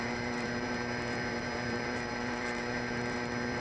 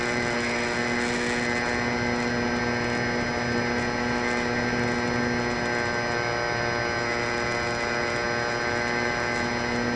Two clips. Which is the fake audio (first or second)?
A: first